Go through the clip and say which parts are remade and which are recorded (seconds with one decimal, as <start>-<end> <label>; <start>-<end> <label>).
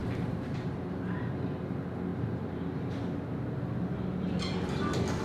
0.0-1.2 remade; 1.2-2.1 recorded; 2.1-2.8 remade; 2.8-5.2 recorded